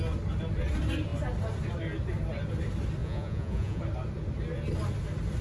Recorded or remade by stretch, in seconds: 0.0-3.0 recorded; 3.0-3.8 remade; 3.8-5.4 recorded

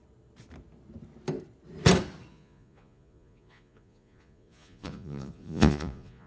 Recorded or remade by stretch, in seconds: 0.0-2.3 recorded; 2.3-6.3 remade

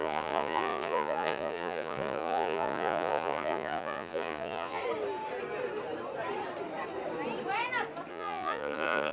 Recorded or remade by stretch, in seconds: 0.0-4.8 remade; 4.8-8.1 recorded; 8.1-9.1 remade

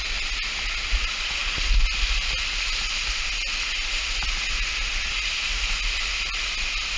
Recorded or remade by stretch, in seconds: 0.0-7.0 recorded

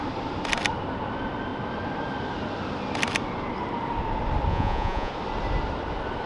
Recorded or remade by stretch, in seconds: 0.0-4.5 recorded; 4.5-5.1 remade; 5.1-6.3 recorded

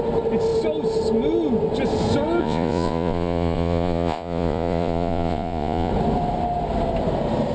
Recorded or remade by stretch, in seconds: 0.0-2.4 recorded; 2.4-5.9 remade; 5.9-7.5 recorded